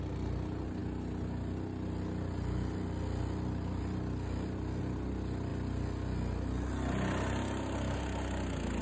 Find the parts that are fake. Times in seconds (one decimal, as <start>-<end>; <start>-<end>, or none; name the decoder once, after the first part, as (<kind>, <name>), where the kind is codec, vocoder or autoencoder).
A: none